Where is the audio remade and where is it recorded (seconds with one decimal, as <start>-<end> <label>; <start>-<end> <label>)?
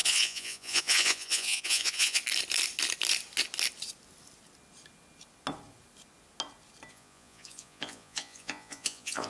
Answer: 0.0-2.2 remade; 2.2-6.9 recorded; 6.9-9.3 remade